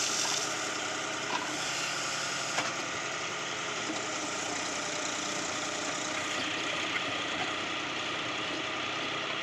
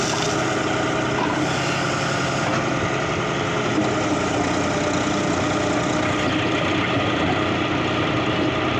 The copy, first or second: first